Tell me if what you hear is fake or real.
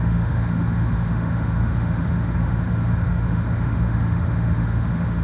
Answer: fake